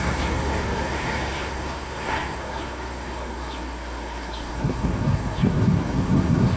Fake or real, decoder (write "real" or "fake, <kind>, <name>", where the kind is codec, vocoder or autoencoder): fake, codec, SNAC